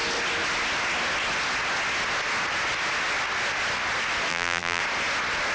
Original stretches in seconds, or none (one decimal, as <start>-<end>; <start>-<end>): 0.0-4.3; 4.8-5.5